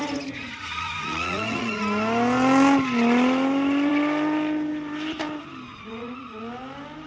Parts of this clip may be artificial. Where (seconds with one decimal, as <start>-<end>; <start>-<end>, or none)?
0.0-1.8; 5.7-6.4